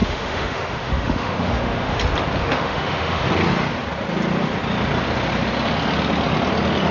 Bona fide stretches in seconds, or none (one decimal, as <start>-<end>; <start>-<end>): 2.0-2.4; 3.2-6.9